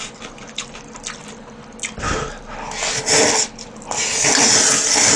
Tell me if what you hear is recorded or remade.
recorded